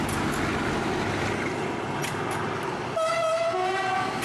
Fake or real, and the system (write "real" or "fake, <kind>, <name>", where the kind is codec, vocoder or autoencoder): real